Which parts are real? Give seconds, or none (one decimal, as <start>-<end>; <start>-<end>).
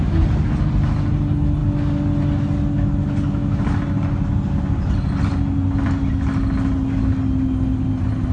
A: 0.0-8.3